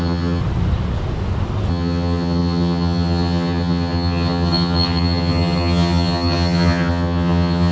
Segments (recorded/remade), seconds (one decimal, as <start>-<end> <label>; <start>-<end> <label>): 0.0-0.4 remade; 0.4-1.7 recorded; 1.7-7.7 remade